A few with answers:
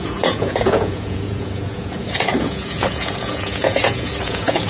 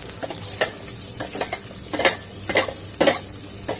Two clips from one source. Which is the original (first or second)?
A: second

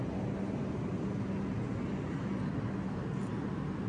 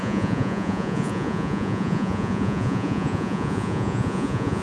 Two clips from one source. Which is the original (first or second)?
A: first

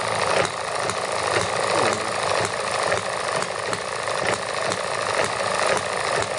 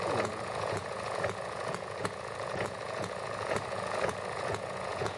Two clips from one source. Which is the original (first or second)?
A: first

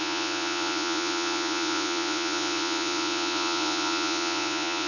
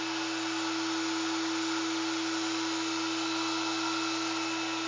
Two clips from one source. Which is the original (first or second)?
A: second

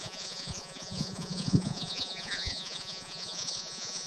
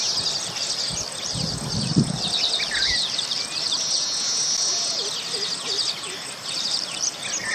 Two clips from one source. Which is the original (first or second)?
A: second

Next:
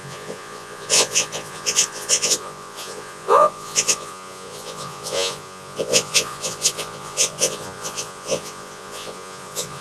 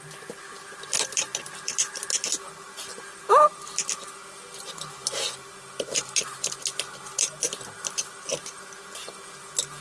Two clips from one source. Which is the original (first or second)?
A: second